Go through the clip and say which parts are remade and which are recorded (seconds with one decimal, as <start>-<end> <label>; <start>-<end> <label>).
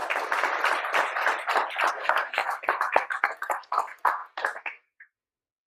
0.0-1.9 recorded; 1.9-5.7 remade